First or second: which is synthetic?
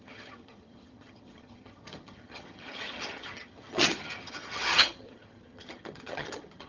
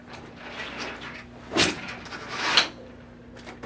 first